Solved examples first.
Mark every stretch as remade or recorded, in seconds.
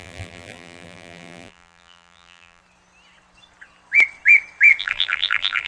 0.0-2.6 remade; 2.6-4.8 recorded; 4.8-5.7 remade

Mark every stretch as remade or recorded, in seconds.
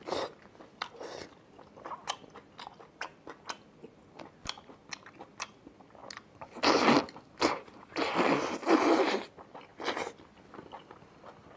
0.0-11.6 recorded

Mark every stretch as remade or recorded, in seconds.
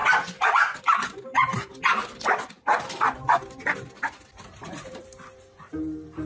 0.0-0.5 recorded; 0.5-1.7 remade; 1.7-4.9 recorded; 4.9-6.3 remade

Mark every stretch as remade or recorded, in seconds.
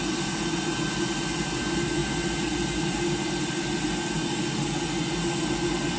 0.0-6.0 recorded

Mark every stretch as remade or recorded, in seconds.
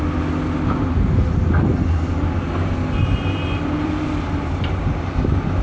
0.0-3.0 recorded; 3.0-4.8 remade; 4.8-5.6 recorded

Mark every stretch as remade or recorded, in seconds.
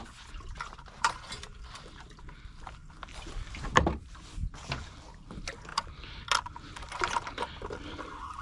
0.0-2.8 remade; 2.8-3.3 recorded; 3.3-5.7 remade; 5.7-6.7 recorded; 6.7-8.4 remade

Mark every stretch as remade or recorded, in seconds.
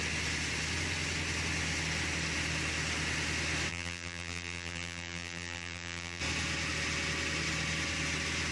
0.0-3.7 recorded; 3.7-6.2 remade; 6.2-8.5 recorded